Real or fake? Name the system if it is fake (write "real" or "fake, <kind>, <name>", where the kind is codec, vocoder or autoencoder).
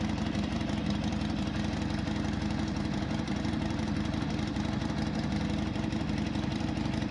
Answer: fake, vocoder, BigVGAN v2